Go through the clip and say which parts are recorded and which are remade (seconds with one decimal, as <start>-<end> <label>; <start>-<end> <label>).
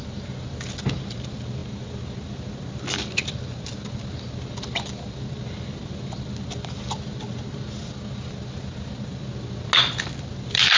0.0-10.8 recorded